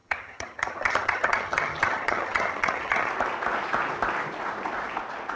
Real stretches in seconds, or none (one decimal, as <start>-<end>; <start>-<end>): 3.1-5.4